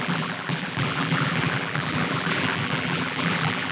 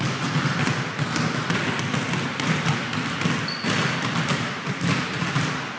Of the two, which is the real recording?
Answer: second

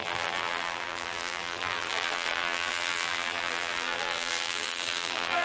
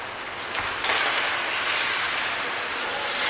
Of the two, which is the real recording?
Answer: second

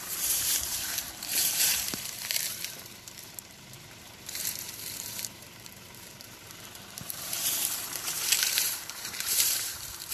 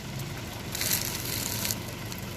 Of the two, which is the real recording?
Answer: second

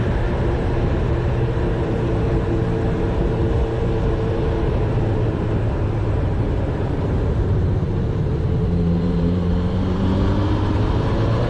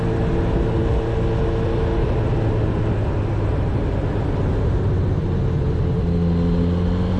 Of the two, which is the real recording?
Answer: second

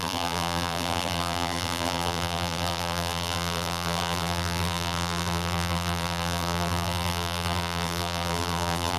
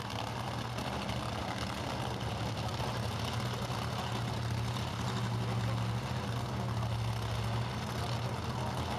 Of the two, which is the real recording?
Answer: second